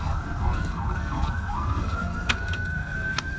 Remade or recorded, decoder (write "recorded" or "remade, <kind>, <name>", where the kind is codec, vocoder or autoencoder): remade, codec, SNAC